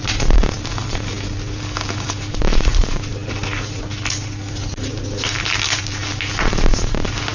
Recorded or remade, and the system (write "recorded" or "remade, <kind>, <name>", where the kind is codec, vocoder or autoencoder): recorded